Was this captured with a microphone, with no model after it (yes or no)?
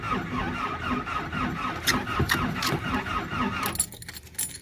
yes